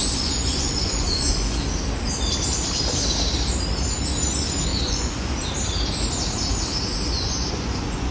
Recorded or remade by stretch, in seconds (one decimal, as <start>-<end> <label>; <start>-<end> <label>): 0.0-1.6 remade; 1.6-4.7 recorded; 4.7-5.4 remade; 5.4-6.9 recorded; 6.9-8.1 remade